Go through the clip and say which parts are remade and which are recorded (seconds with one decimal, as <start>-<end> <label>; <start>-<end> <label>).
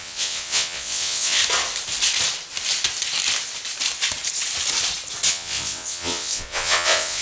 0.0-1.4 remade; 1.4-5.3 recorded; 5.3-7.2 remade